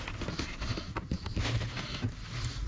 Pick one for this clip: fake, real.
real